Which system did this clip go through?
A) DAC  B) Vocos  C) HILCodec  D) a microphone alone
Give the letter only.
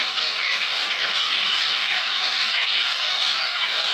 A